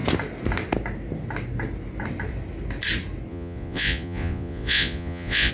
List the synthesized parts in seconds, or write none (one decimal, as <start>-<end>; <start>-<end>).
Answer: 3.3-5.5